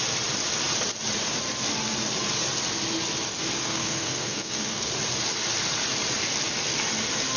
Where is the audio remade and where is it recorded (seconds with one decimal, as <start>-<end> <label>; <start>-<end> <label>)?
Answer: 0.0-3.6 recorded; 3.6-4.9 remade; 4.9-7.4 recorded